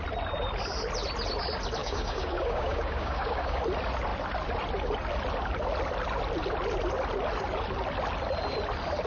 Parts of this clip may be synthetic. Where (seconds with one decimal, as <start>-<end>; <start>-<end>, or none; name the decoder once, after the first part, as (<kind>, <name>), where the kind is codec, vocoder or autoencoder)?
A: 1.8-3.6 (codec, DAC)